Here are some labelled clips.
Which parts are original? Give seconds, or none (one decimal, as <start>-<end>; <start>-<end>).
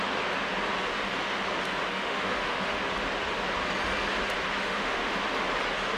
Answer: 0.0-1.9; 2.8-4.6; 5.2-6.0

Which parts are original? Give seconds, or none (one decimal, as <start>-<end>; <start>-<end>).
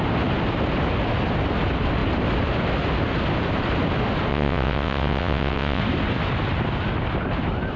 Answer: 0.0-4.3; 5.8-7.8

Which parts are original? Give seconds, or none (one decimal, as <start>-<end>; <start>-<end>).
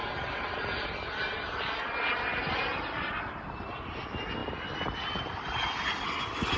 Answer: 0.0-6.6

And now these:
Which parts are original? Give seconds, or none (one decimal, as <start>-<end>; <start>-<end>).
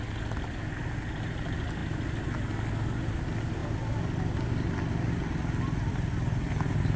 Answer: 0.0-7.0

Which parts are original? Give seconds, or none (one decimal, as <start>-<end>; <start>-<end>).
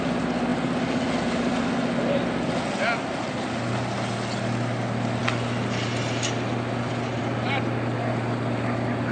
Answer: 0.0-9.1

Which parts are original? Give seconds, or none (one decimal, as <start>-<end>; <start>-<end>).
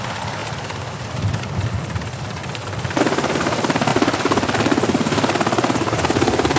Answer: 0.0-0.4; 1.4-2.4; 3.0-6.6